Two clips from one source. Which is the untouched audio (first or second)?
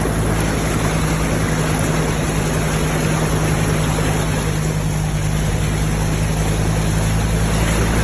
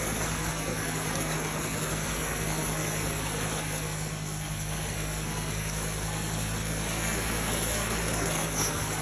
first